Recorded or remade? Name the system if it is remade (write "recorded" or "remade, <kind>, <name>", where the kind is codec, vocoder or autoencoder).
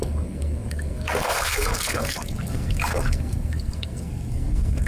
remade, codec, SNAC